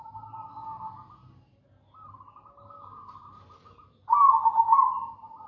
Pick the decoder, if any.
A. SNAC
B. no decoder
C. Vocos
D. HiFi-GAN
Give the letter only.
B